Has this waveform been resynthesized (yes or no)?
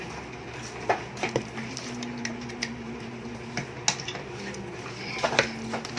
no